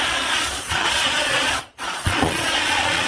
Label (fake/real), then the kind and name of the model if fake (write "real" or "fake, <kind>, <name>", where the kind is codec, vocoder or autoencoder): fake, vocoder, Vocos